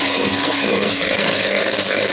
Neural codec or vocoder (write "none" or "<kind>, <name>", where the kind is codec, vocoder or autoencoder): codec, SNAC